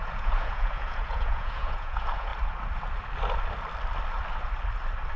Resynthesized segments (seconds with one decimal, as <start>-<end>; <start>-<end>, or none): 0.0-2.3